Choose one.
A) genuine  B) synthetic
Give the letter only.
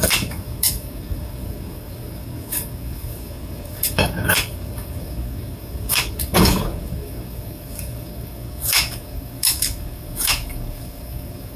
B